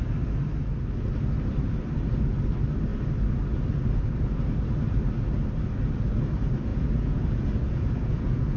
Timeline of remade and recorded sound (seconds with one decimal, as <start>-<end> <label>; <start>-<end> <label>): 0.0-6.7 recorded; 6.7-8.6 remade